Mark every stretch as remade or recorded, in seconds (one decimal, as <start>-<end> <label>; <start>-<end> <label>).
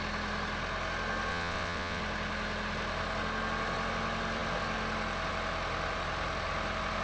0.0-1.3 recorded; 1.3-2.0 remade; 2.0-7.0 recorded